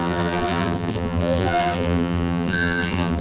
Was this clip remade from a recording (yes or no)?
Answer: yes